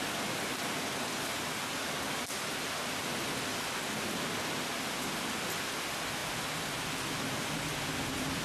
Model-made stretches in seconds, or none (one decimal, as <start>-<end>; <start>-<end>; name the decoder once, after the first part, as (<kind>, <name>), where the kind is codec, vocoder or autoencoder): none